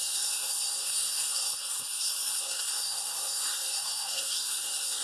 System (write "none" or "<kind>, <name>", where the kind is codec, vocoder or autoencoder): codec, SNAC